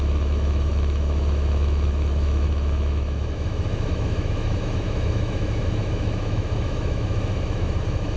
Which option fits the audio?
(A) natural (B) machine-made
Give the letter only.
B